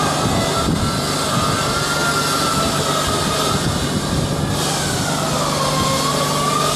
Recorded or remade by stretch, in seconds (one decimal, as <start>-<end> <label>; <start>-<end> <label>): 0.0-6.8 recorded